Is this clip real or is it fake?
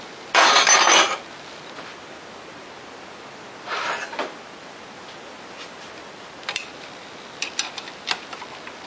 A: real